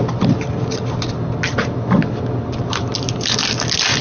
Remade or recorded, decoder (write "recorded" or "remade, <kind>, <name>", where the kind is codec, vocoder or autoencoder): recorded